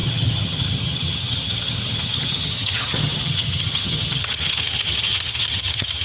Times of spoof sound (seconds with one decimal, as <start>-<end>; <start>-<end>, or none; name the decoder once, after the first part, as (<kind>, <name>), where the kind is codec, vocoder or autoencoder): 0.0-6.0 (vocoder, HiFi-GAN)